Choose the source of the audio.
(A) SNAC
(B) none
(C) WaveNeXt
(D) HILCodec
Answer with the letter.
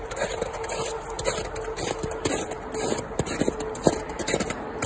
B